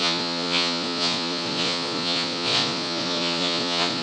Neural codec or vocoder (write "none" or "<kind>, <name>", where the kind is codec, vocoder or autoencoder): vocoder, Vocos